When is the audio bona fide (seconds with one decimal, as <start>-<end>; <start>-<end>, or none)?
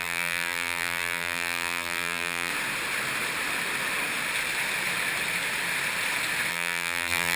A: 2.5-6.5